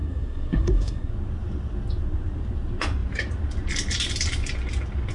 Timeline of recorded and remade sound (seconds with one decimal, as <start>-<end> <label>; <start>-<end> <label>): 0.0-1.1 remade; 1.1-5.1 recorded

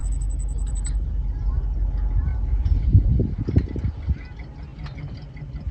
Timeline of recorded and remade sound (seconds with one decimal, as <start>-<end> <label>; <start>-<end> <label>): 0.0-0.7 remade; 0.7-5.7 recorded

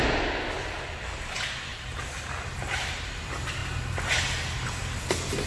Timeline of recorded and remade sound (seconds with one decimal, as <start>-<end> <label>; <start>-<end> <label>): 0.0-1.7 recorded; 1.7-3.2 remade; 3.2-3.6 recorded; 3.6-5.1 remade; 5.1-5.5 recorded

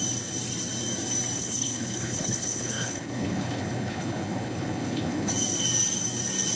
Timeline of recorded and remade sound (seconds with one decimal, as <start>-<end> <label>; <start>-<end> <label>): 0.0-1.4 recorded; 1.4-5.3 remade; 5.3-6.6 recorded

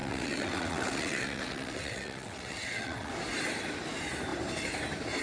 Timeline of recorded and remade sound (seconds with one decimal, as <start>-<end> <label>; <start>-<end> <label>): 0.0-3.1 remade; 3.1-5.2 recorded

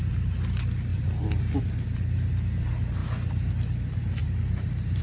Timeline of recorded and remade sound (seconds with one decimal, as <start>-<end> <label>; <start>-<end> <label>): 0.0-0.9 recorded; 0.9-1.6 remade; 1.6-4.2 recorded; 4.2-5.0 remade